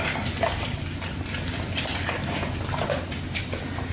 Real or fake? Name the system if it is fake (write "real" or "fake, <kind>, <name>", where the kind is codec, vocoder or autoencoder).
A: real